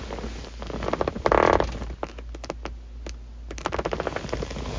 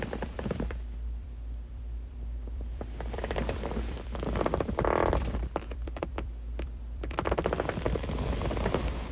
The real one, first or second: first